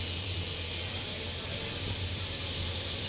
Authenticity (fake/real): real